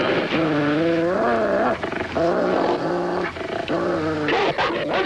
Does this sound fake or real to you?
real